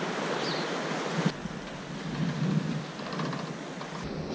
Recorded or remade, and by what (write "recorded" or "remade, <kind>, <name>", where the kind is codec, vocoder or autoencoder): recorded